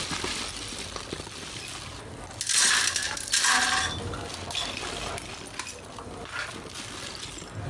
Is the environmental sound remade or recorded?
recorded